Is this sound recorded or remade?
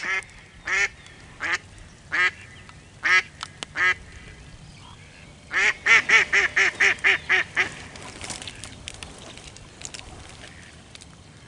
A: recorded